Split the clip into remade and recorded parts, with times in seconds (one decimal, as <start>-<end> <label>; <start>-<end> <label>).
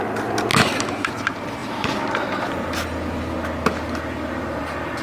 0.0-0.5 recorded; 0.5-1.1 remade; 1.1-5.0 recorded